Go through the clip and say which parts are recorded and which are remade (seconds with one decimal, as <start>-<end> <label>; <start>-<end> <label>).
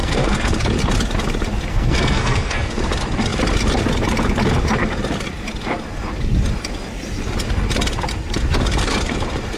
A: 0.0-0.5 remade; 0.5-1.7 recorded; 1.7-2.7 remade; 2.7-9.6 recorded